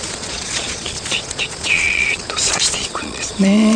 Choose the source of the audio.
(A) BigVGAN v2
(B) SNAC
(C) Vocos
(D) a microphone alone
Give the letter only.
C